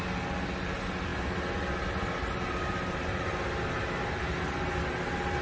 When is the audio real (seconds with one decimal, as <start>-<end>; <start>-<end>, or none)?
0.0-5.4